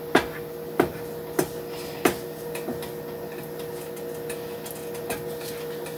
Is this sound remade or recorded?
recorded